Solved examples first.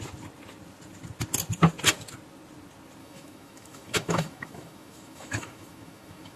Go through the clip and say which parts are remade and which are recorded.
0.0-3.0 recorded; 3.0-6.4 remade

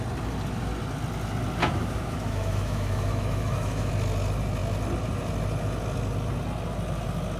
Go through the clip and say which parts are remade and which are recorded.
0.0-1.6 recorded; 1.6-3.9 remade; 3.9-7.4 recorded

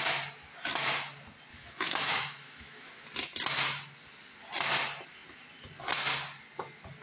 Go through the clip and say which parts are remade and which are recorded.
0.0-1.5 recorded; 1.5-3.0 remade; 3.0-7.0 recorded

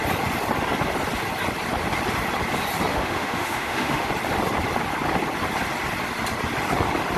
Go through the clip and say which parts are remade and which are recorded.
0.0-2.9 recorded; 2.9-4.1 remade; 4.1-7.2 recorded

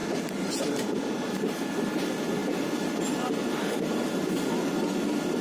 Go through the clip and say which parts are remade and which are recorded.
0.0-5.4 recorded